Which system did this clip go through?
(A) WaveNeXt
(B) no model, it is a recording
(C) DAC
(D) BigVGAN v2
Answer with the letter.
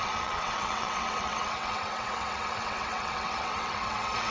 A